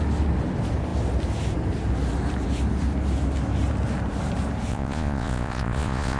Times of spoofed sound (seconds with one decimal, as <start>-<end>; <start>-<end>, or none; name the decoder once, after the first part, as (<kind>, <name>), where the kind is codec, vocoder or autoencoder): 4.7-6.2 (vocoder, Vocos)